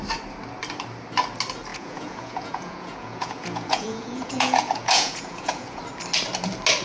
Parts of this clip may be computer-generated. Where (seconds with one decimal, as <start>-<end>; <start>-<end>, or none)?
1.7-5.8